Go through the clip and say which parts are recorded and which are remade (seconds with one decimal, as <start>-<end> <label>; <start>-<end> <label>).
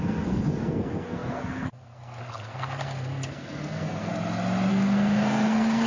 0.0-4.1 remade; 4.1-4.7 recorded; 4.7-5.9 remade